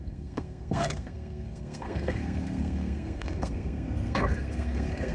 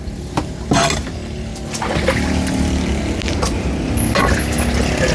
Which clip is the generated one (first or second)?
first